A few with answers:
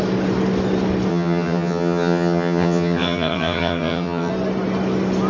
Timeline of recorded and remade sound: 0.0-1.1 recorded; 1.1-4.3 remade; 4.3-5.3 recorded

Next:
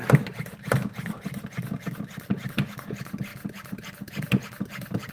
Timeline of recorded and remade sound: 0.0-5.1 recorded

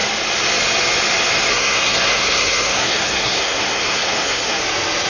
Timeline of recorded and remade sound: 0.0-1.5 recorded; 1.5-4.6 remade; 4.6-5.1 recorded

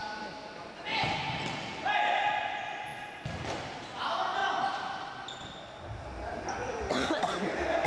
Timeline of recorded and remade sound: 0.0-1.0 remade; 1.0-4.4 recorded; 4.4-5.1 remade; 5.1-7.9 recorded